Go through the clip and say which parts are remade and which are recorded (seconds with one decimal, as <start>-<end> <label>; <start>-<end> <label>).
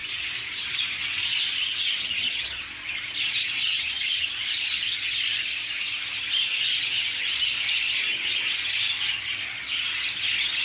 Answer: 0.0-4.8 remade; 4.8-10.6 recorded